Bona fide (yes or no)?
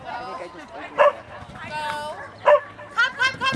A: yes